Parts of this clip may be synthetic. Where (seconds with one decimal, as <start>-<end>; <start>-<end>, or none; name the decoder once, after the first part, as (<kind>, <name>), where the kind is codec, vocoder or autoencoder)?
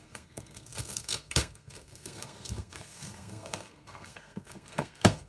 0.0-5.3 (codec, SNAC)